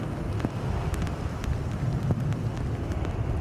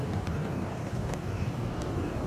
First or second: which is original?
first